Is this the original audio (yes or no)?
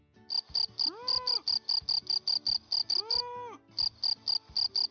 yes